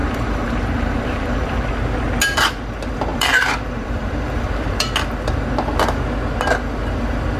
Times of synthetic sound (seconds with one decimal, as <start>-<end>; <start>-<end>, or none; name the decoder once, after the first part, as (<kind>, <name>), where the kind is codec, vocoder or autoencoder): 0.0-1.7 (vocoder, BigVGAN v2); 3.1-4.7